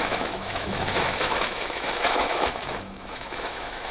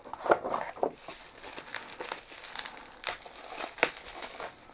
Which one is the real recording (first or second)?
second